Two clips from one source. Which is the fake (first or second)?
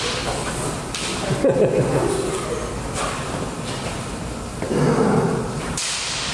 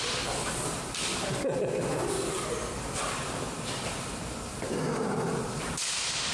second